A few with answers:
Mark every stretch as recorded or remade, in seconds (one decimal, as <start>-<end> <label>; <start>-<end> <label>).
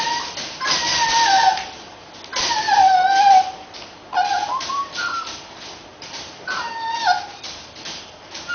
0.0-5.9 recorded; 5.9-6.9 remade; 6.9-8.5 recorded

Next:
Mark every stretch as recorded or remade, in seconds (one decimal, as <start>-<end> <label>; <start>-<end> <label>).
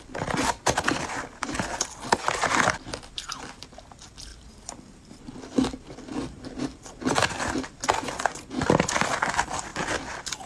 0.0-10.5 recorded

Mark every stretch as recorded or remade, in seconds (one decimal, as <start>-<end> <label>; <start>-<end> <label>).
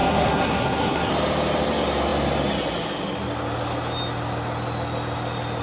0.0-1.1 remade; 1.1-5.6 recorded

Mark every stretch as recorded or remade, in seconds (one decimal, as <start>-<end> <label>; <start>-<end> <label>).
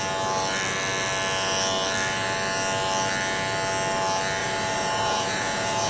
0.0-4.4 recorded; 4.4-5.9 remade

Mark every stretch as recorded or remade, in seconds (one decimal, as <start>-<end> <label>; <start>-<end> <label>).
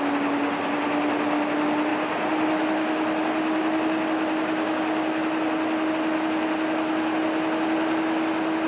0.0-8.7 recorded